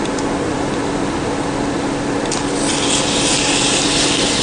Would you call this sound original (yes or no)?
yes